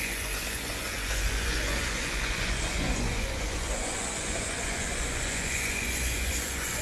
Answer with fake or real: fake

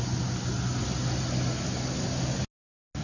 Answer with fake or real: real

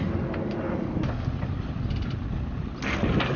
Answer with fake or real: real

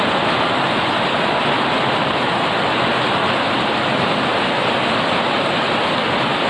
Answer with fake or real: real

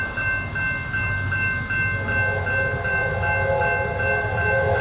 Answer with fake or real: real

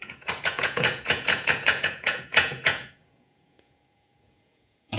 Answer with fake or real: fake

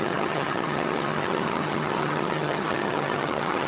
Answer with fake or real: fake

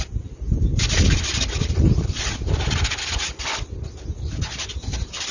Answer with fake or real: real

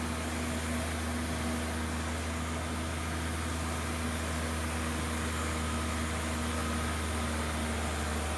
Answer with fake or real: real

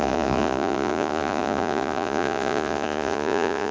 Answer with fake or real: fake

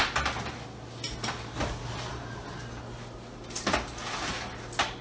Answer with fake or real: real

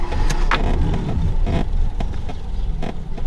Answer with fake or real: real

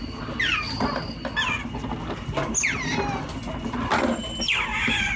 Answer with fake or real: real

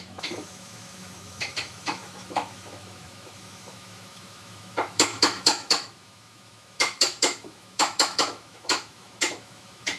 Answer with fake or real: fake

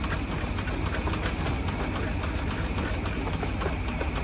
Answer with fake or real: real